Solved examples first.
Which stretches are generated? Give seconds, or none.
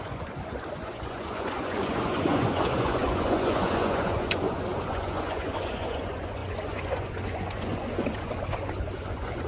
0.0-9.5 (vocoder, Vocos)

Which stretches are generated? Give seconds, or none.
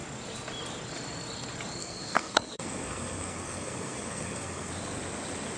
1.8-4.7 (codec, SNAC)